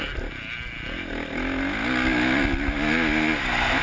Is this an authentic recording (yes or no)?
yes